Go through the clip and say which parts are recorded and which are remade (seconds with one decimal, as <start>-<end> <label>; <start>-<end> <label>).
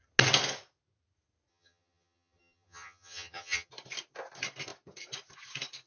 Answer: 0.0-1.5 recorded; 1.5-3.7 remade; 3.7-5.9 recorded